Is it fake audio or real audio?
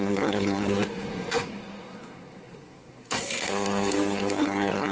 fake